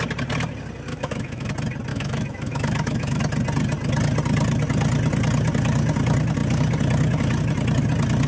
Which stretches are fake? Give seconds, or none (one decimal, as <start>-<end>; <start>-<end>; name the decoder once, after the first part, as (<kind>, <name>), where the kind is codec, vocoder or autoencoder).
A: 0.9-1.5 (autoencoder, DAC-VAE); 1.9-3.2